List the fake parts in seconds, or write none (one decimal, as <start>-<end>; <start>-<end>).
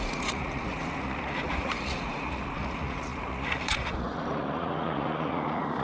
0.0-5.8